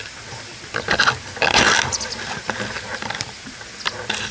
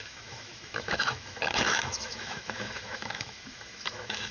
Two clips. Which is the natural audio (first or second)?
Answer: first